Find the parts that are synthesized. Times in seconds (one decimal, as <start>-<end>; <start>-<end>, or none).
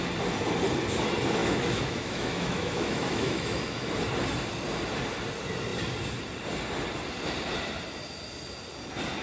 1.4-3.9